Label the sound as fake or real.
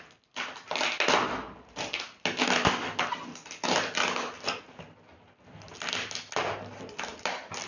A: real